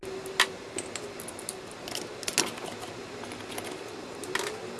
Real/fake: real